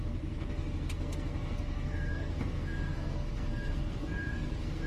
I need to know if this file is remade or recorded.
remade